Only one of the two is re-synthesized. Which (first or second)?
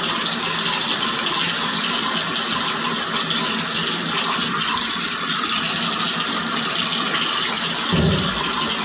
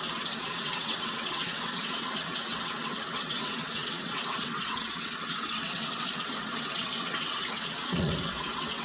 second